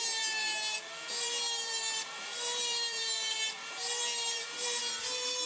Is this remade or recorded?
remade